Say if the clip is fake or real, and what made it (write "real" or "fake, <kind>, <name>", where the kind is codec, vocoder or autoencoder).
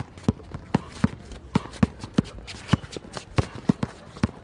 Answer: real